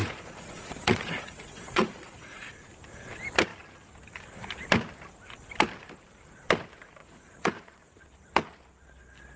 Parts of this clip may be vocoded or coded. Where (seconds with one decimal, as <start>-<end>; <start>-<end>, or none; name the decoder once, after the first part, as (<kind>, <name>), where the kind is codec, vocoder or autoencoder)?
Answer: 0.0-2.5 (vocoder, Vocos); 7.0-8.0